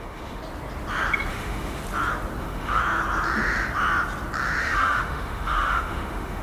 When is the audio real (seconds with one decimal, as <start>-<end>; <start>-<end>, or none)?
0.4-1.3; 1.8-2.4; 2.8-4.6